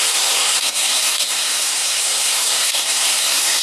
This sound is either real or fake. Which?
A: fake